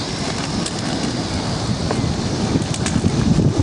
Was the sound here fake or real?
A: real